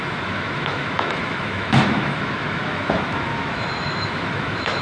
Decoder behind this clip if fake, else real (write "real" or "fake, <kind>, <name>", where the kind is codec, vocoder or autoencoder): fake, autoencoder, DAC-VAE